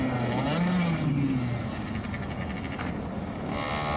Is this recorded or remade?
recorded